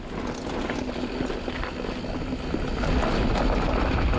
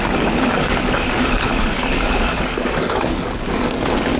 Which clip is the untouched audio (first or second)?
first